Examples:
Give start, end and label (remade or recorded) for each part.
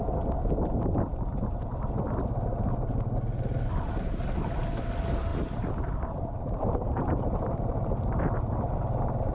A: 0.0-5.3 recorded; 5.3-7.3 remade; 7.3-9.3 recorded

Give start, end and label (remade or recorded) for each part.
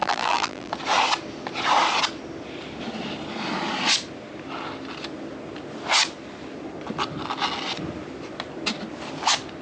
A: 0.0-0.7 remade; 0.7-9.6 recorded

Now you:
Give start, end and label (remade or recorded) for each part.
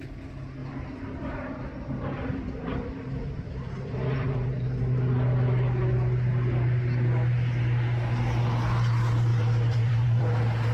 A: 0.0-0.6 recorded; 0.6-4.8 remade; 4.8-9.3 recorded; 9.3-10.2 remade; 10.2-10.7 recorded